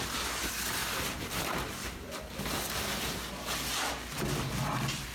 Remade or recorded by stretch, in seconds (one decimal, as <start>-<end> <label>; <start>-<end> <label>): 0.0-0.8 recorded; 0.8-2.4 remade; 2.4-5.1 recorded